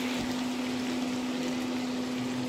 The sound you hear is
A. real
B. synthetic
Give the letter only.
A